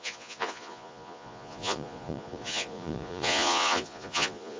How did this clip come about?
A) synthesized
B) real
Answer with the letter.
A